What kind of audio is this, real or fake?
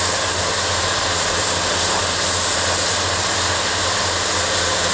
real